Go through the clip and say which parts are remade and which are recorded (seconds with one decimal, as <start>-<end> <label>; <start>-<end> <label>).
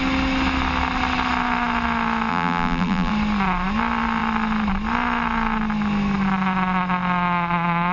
0.0-2.3 recorded; 2.3-3.1 remade; 3.1-7.9 recorded